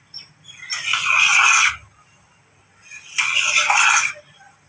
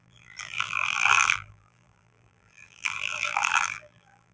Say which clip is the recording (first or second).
first